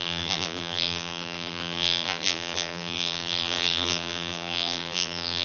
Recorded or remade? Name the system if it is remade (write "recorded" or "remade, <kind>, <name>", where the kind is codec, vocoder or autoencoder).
remade, vocoder, BigVGAN v2